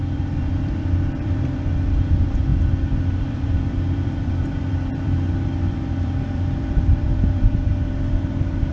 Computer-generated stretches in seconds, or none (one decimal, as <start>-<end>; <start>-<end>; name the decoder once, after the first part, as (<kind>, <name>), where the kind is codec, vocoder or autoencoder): 0.0-2.5 (vocoder, BigVGAN v2); 3.2-7.7